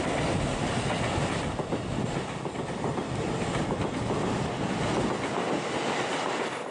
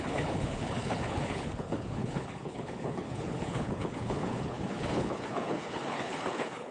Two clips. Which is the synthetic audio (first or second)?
second